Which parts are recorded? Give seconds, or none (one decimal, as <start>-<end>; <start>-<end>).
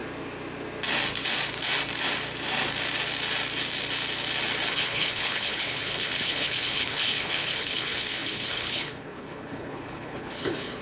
0.0-4.7